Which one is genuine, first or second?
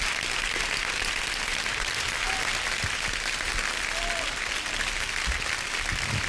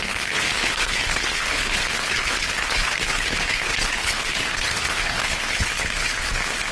first